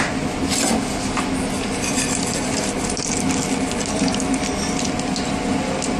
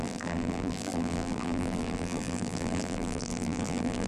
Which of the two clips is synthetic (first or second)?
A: second